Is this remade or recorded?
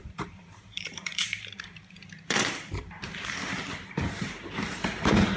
remade